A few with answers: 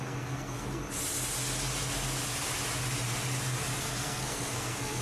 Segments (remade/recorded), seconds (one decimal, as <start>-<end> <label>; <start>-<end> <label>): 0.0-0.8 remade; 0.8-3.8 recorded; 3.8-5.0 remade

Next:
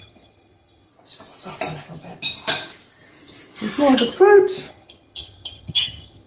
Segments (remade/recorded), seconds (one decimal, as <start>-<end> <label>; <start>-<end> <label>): 0.0-0.9 remade; 0.9-4.7 recorded; 4.7-6.3 remade

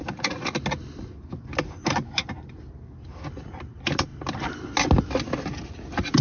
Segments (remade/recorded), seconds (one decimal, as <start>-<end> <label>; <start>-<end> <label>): 0.0-6.2 recorded

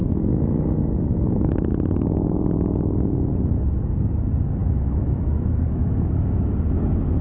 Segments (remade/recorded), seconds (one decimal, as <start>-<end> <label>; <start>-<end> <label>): 0.0-1.7 remade; 1.7-4.6 recorded; 4.6-6.5 remade; 6.5-7.2 recorded

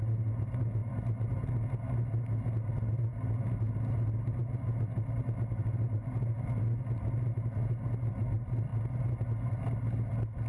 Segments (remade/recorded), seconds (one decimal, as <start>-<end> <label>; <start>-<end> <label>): 0.0-10.5 recorded